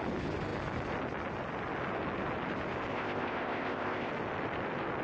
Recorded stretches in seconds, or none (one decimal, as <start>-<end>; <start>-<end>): 0.0-2.9; 4.1-5.0